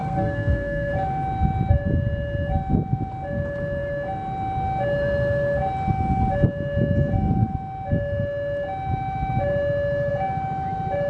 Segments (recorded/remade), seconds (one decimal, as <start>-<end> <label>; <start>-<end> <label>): 0.0-0.9 remade; 0.9-11.1 recorded

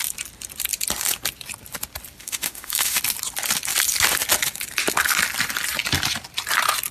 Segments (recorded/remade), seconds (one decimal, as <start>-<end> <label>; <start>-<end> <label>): 0.0-2.2 recorded; 2.2-3.0 remade; 3.0-6.9 recorded

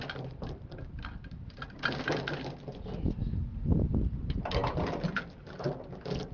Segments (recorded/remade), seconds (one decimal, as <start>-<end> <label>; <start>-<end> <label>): 0.0-6.3 recorded

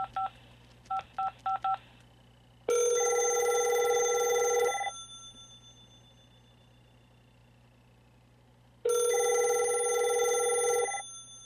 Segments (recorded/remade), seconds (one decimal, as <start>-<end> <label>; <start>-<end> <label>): 0.0-11.5 recorded

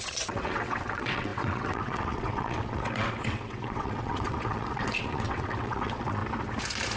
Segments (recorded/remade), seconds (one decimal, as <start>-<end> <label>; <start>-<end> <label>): 0.0-6.2 remade; 6.2-7.0 recorded